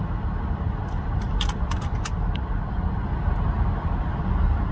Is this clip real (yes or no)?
no